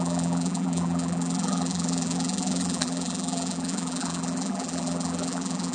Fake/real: fake